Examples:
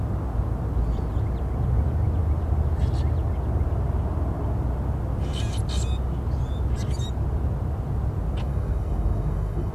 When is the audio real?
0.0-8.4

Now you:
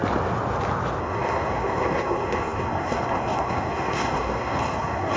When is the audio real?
0.0-1.0

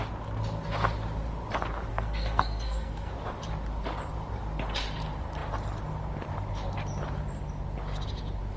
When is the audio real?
0.0-1.9; 3.1-8.6

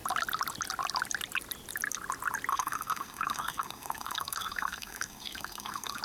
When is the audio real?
0.0-2.5